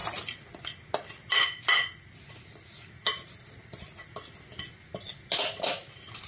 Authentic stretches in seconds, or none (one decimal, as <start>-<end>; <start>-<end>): 0.0-6.3